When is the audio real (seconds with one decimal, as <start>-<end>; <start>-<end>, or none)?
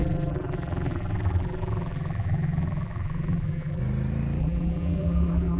3.8-4.4